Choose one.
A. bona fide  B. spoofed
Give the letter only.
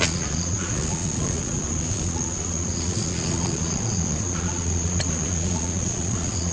B